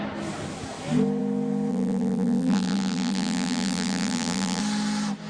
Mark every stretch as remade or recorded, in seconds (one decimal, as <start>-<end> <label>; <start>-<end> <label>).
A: 0.0-1.7 recorded; 1.7-4.6 remade; 4.6-5.3 recorded